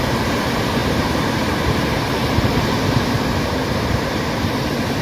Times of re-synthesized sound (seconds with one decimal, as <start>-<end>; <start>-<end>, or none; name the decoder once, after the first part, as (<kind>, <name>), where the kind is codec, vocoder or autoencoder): 0.0-5.0 (vocoder, BigVGAN v2)